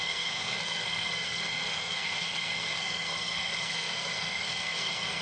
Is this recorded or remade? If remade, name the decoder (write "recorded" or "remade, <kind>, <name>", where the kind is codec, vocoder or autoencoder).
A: remade, codec, SNAC